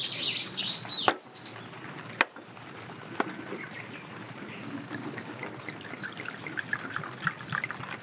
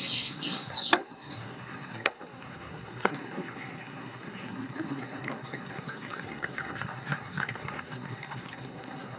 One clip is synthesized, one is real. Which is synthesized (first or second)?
second